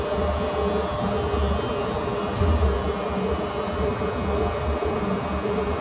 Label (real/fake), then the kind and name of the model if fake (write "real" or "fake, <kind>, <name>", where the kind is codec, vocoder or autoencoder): real